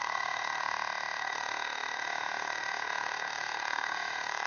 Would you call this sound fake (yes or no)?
yes